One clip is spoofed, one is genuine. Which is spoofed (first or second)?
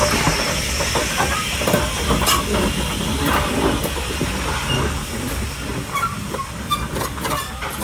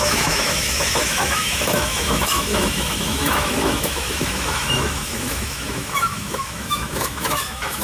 second